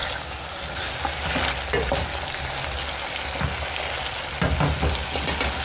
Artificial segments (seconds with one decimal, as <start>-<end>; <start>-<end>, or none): none